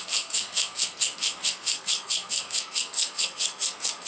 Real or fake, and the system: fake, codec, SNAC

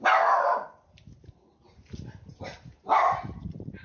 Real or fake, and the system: real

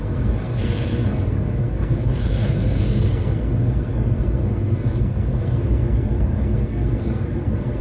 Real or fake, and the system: fake, codec, SNAC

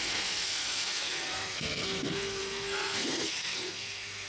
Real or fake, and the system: fake, codec, SNAC